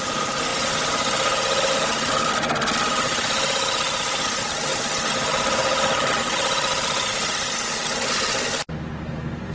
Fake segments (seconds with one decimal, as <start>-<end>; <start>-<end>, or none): none